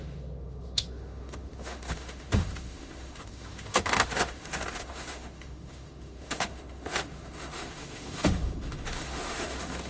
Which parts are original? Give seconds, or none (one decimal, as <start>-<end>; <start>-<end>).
none